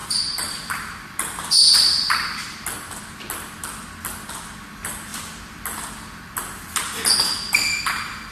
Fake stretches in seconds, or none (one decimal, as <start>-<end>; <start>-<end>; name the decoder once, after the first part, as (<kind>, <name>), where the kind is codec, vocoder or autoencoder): none